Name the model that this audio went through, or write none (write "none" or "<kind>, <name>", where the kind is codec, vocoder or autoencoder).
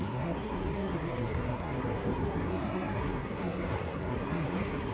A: codec, SNAC